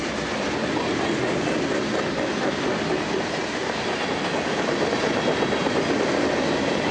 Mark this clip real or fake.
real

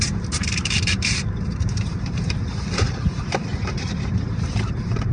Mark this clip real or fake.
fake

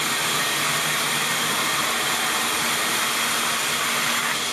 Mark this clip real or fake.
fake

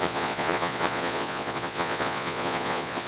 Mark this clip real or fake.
fake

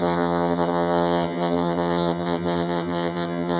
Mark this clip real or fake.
fake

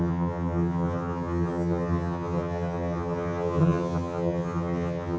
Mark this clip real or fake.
fake